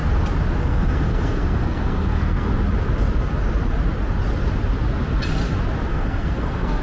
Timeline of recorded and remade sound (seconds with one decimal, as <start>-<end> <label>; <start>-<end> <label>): 0.0-0.6 recorded; 0.6-2.5 remade; 2.5-5.9 recorded; 5.9-6.8 remade